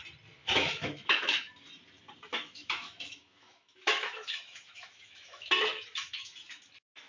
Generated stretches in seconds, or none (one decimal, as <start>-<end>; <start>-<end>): 0.4-1.5; 2.3-6.6